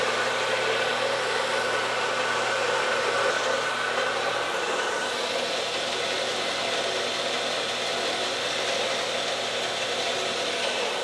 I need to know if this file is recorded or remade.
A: remade